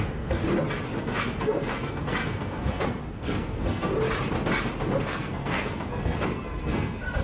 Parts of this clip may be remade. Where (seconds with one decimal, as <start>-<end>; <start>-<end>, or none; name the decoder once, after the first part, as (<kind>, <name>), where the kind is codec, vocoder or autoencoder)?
0.0-0.4 (codec, SNAC); 1.0-3.9; 5.0-7.2